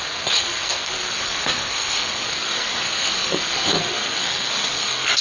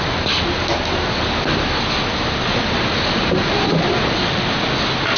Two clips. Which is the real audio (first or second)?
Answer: second